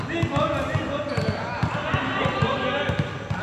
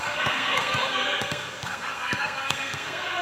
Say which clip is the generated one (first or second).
second